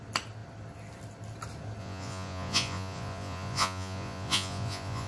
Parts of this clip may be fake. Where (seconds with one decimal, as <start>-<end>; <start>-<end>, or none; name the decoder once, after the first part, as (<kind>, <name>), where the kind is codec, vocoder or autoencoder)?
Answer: 1.8-5.1 (vocoder, Vocos)